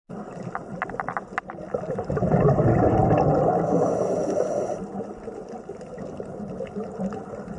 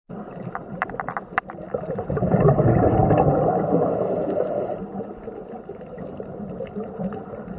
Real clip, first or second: first